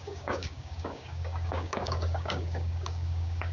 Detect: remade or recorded remade